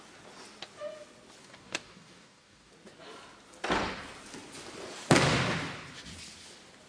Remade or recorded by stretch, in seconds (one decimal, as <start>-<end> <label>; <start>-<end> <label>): 0.0-1.4 recorded; 1.4-2.7 remade; 2.7-6.9 recorded